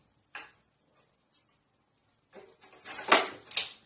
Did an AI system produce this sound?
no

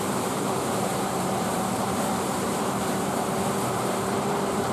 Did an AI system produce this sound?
yes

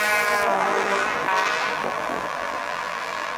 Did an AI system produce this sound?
yes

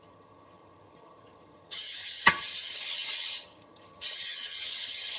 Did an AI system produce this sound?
yes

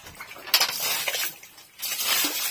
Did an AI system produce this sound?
no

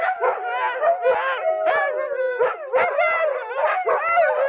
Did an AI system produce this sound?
no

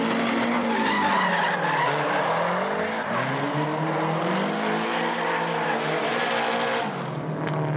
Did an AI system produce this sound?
no